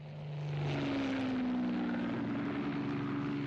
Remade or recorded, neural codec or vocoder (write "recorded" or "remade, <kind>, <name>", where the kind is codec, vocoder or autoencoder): recorded